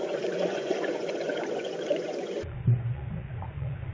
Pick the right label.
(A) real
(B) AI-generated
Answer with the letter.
B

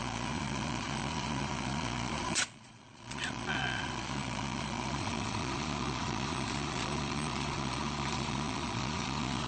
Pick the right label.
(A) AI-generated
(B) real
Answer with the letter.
A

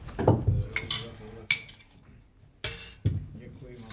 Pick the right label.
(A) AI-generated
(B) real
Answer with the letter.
B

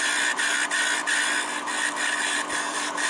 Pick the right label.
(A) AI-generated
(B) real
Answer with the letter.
B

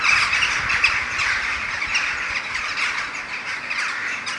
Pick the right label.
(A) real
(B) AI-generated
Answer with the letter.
A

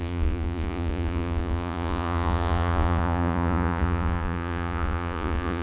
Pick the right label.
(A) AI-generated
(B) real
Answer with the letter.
A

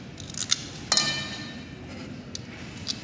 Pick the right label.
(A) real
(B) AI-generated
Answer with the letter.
A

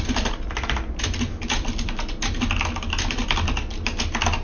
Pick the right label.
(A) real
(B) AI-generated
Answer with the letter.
A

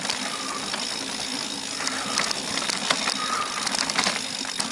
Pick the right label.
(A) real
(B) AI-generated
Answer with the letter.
A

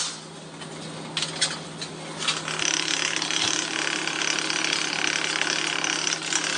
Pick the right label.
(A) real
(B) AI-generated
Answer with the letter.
A